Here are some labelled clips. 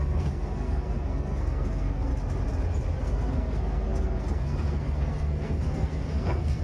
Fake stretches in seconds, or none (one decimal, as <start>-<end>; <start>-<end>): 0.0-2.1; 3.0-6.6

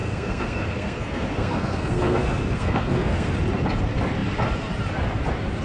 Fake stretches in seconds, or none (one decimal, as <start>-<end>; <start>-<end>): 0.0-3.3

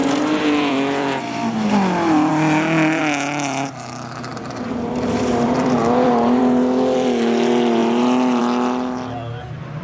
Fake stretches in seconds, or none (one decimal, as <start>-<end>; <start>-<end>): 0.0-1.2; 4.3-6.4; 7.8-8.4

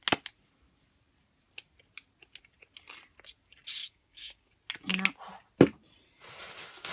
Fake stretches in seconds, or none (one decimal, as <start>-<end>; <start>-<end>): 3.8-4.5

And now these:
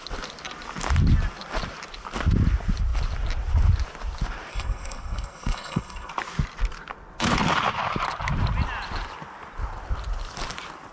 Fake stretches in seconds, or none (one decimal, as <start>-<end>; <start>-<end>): 4.5-6.1

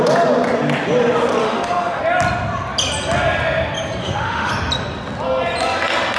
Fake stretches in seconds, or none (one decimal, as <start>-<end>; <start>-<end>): 1.4-2.0; 4.0-4.5